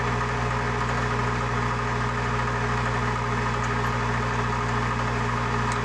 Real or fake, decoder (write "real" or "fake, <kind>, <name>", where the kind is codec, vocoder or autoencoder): real